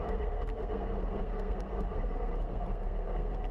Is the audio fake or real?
fake